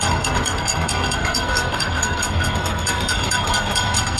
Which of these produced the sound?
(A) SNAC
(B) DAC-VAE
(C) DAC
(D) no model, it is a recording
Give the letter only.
A